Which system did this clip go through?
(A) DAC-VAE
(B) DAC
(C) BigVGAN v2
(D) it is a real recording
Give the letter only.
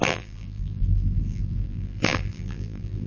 C